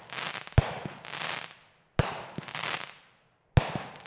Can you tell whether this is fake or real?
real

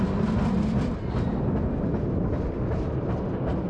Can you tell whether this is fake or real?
real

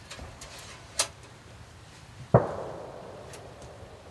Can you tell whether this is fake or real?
real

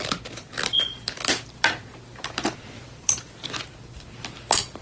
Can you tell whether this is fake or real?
fake